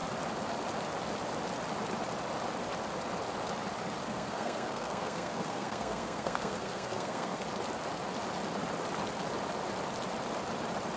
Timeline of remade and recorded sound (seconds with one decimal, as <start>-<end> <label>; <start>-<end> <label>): 0.0-4.0 recorded; 4.0-7.4 remade; 7.4-11.0 recorded